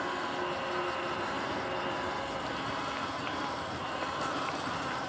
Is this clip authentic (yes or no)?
yes